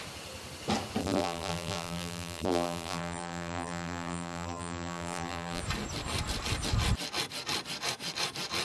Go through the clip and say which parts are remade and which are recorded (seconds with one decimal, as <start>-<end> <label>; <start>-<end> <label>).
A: 0.0-1.0 recorded; 1.0-5.6 remade; 5.6-8.6 recorded